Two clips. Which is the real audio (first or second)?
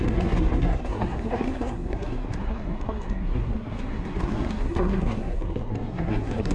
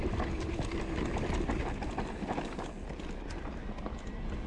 second